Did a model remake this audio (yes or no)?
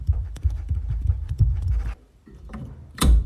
yes